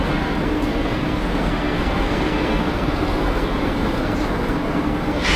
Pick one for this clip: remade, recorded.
remade